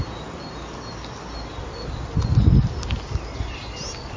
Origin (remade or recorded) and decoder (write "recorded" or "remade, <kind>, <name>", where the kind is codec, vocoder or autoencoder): recorded